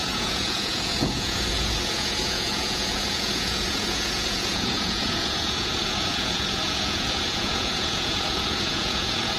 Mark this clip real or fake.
fake